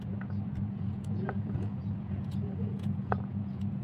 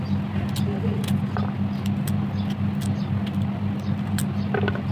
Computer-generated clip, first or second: first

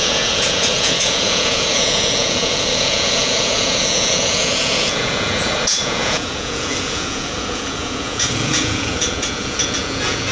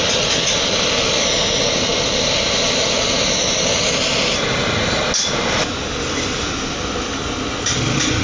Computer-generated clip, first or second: first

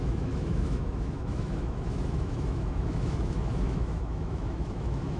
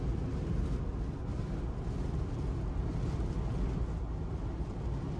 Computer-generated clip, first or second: first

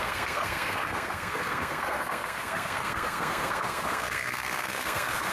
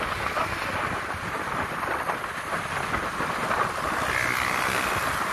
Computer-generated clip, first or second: first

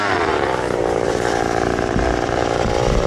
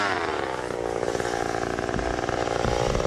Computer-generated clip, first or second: first